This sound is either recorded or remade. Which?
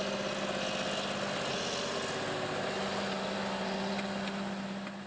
recorded